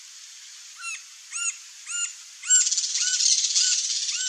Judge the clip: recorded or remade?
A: recorded